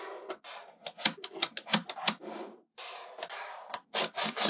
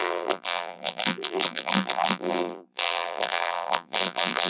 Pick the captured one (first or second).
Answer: first